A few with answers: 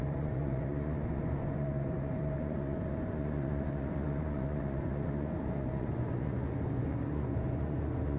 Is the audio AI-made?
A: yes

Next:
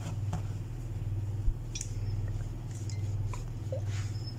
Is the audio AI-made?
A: no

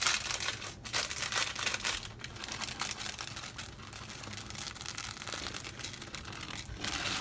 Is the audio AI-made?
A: no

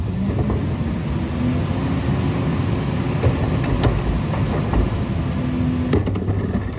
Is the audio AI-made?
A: no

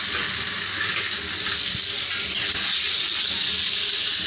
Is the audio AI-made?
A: no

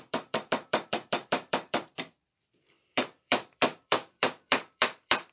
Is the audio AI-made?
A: yes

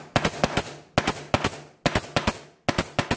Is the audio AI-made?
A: no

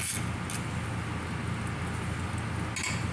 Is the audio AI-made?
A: no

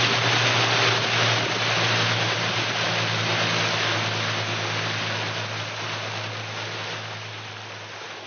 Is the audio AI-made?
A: no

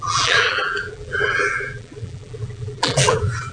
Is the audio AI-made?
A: yes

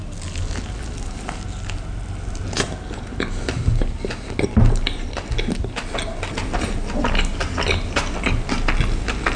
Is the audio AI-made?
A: no